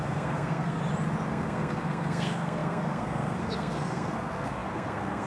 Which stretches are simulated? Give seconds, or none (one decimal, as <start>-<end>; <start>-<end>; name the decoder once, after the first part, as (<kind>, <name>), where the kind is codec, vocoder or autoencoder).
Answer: 0.0-0.8 (codec, SNAC); 1.3-5.3